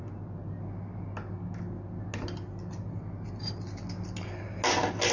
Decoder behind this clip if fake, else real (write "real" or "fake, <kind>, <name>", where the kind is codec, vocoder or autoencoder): real